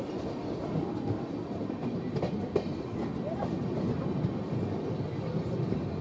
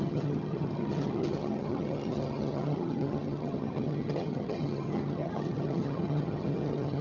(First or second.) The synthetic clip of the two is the second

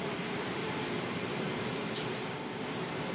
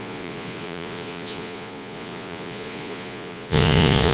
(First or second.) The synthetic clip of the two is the second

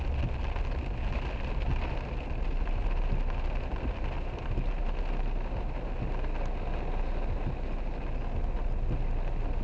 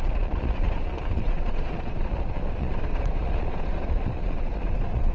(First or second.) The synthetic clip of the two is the second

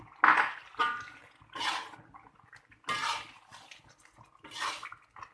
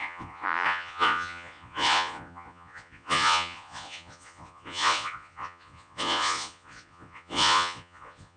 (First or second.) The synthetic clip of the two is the second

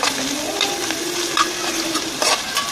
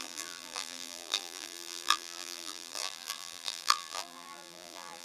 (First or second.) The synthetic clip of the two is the second